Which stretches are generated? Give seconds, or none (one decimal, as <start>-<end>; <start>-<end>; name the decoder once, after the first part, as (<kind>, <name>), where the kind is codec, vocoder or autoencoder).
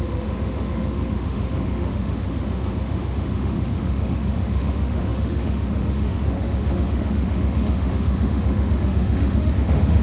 0.0-10.0 (autoencoder, DAC-VAE)